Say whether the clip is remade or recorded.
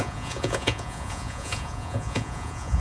remade